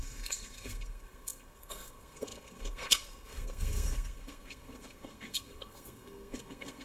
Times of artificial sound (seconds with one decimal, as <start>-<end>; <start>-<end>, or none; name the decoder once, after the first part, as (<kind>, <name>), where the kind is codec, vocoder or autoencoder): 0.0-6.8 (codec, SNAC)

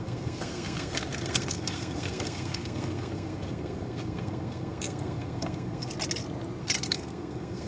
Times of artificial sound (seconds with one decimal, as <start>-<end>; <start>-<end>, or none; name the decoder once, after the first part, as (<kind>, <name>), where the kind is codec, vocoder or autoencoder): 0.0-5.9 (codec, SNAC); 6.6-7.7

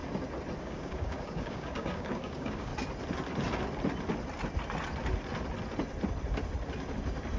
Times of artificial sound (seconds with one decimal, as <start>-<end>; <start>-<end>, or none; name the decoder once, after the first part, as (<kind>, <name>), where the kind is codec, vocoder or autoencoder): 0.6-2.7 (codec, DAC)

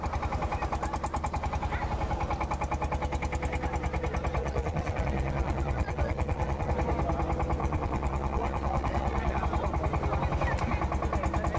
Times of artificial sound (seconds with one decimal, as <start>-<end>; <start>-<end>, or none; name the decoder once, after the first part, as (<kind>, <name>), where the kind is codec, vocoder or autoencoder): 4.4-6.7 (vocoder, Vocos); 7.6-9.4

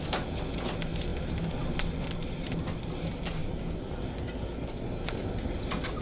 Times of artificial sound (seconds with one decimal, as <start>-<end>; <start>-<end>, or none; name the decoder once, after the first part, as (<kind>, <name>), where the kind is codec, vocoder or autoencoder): none